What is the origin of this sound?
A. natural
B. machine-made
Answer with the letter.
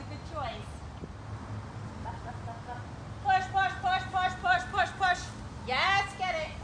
A